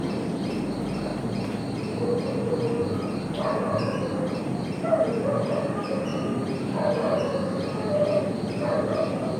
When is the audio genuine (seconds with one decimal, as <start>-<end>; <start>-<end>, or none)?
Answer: 1.1-4.4; 6.1-8.1